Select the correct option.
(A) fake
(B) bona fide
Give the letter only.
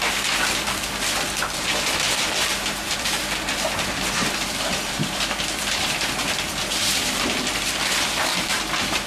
A